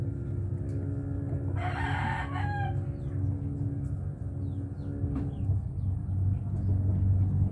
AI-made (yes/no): no